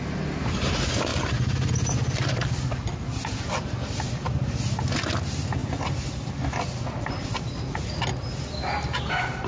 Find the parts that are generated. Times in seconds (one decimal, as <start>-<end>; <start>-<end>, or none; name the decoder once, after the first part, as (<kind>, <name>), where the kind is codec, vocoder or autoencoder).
none